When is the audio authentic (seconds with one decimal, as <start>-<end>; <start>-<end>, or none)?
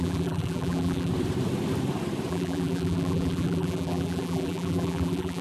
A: 1.1-2.3